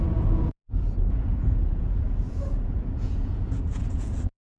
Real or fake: fake